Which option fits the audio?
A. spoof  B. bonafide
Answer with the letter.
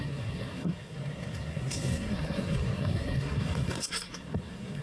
A